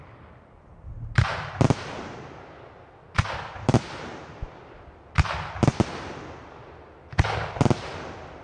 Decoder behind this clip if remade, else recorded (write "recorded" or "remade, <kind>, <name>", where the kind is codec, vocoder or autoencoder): recorded